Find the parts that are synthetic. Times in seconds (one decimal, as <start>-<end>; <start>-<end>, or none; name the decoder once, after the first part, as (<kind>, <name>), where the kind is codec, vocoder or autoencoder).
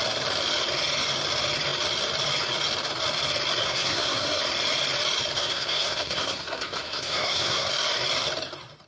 3.6-4.4 (codec, SNAC); 5.4-7.7